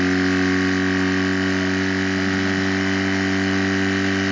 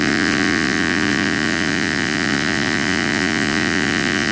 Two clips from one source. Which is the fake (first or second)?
second